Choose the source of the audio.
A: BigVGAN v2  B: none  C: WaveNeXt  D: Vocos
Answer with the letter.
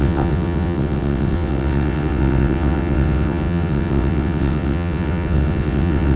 C